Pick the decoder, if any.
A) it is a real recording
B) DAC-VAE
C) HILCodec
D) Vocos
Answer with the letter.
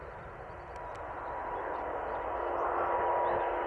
A